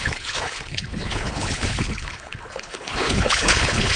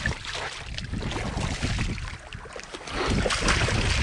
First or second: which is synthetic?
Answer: first